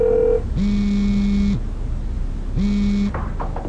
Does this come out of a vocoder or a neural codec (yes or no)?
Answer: no